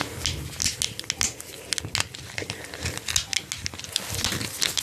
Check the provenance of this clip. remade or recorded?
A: recorded